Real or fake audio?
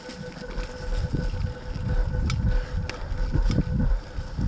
real